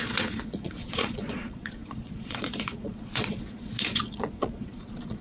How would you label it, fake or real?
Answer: fake